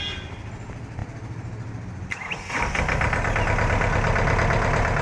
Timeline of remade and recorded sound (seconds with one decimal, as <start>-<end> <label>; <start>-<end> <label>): 0.0-5.0 recorded